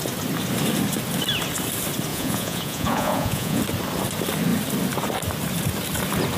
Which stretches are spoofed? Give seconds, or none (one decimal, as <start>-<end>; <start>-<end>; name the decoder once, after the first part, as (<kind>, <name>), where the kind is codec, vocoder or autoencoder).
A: 2.1-3.6 (vocoder, Vocos)